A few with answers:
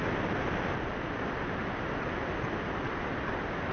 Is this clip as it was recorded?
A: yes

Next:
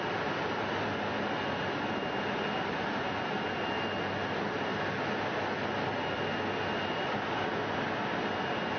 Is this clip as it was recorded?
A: yes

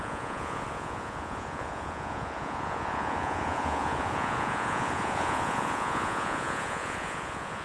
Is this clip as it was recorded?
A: no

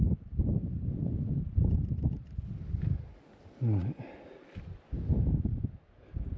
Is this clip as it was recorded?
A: yes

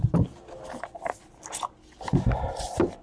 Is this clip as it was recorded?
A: yes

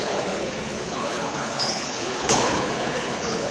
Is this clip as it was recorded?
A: no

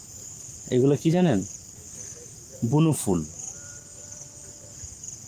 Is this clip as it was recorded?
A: no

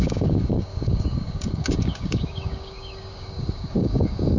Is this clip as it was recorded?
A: no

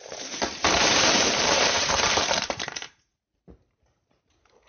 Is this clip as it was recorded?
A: no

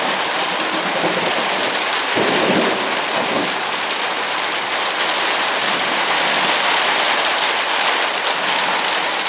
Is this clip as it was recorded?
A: yes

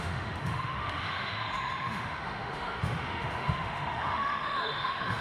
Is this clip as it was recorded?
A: no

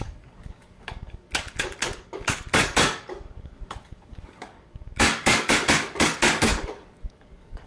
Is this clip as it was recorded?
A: no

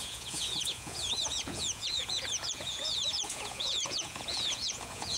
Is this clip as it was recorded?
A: no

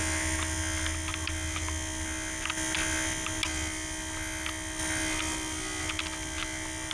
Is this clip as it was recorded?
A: yes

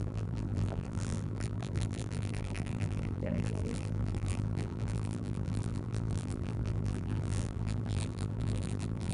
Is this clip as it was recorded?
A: no